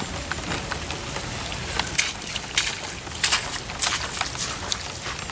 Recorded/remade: recorded